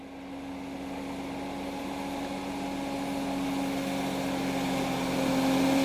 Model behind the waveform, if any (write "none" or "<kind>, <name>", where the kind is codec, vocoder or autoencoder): none